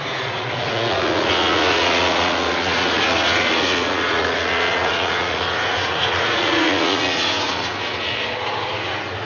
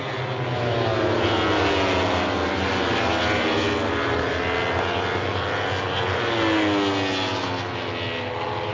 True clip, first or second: second